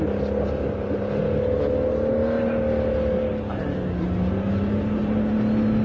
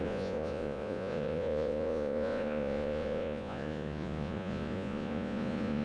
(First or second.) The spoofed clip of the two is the second